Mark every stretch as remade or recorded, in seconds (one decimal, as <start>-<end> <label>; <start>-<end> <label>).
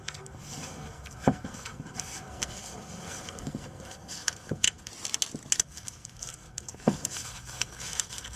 0.0-4.9 remade; 4.9-5.6 recorded; 5.6-8.4 remade